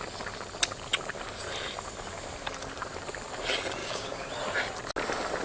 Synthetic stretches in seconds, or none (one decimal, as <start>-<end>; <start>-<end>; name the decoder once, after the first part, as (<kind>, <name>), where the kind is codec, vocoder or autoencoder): 3.8-4.3 (codec, DAC)